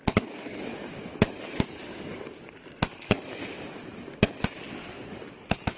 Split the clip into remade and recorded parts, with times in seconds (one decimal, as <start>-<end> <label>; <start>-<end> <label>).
0.0-0.7 recorded; 0.7-4.2 remade; 4.2-4.8 recorded; 4.8-5.8 remade